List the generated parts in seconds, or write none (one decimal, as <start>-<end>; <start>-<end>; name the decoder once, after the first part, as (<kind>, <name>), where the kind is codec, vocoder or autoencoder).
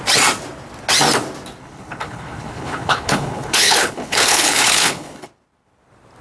1.6-5.3 (codec, HILCodec)